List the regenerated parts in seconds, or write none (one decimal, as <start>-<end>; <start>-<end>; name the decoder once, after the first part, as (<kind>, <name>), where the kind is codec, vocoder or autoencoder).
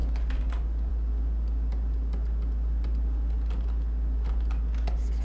none